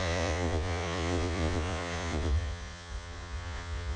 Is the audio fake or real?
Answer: fake